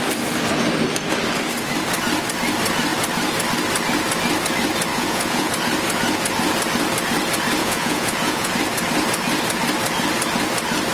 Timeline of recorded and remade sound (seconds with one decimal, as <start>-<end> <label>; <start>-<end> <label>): 0.0-4.9 recorded; 4.9-5.5 remade; 5.5-7.6 recorded; 7.6-8.5 remade; 8.5-10.9 recorded